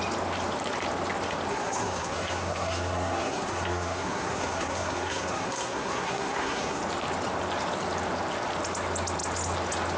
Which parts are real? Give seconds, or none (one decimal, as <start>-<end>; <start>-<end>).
0.0-1.5; 6.8-10.0